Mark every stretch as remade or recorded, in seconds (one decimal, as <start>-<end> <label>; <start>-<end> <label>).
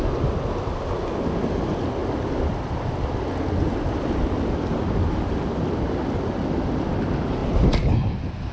0.0-8.5 recorded